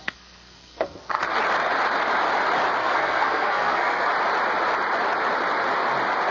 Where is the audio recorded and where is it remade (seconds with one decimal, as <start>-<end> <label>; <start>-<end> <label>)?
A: 0.0-1.2 remade; 1.2-2.8 recorded; 2.8-4.1 remade; 4.1-6.3 recorded